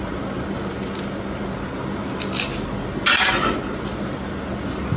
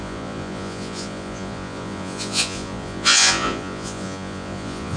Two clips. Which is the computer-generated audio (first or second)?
second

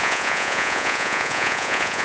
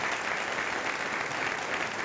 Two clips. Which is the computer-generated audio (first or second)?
first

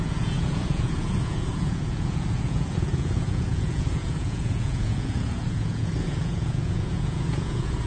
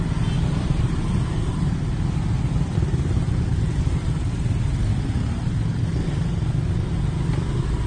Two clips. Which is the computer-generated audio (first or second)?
first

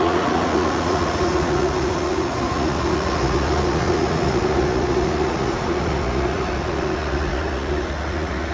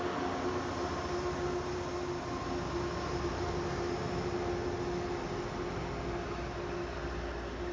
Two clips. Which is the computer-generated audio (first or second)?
first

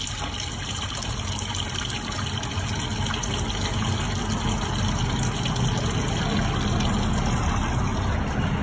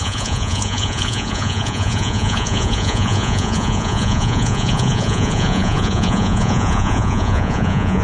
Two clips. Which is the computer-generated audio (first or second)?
second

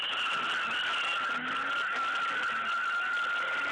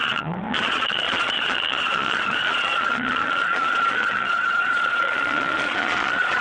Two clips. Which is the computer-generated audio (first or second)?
second